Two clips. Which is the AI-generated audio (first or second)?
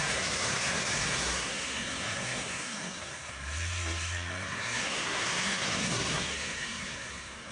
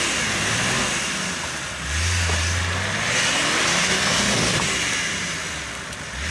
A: first